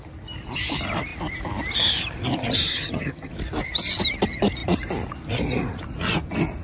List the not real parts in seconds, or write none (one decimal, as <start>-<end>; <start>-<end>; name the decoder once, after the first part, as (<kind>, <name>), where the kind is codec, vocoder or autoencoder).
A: 2.7-3.3 (vocoder, HiFi-GAN)